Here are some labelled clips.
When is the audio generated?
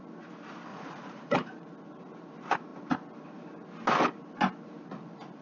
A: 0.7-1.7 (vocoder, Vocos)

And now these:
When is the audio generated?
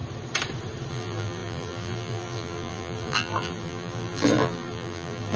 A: 0.9-5.4 (vocoder, BigVGAN v2)